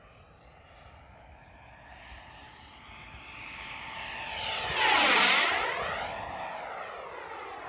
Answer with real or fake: real